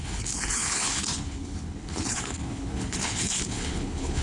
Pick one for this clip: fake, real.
fake